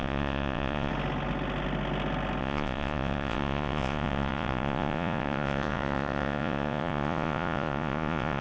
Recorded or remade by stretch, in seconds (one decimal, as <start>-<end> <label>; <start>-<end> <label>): 0.0-0.9 remade; 0.9-2.4 recorded; 2.4-8.4 remade